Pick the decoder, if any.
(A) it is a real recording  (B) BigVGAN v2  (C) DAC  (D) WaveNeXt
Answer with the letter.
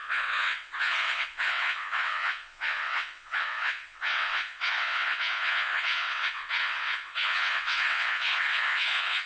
D